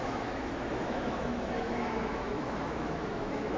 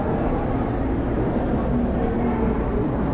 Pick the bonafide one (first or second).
second